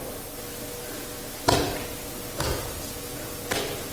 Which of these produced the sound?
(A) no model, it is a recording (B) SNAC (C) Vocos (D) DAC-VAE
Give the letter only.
A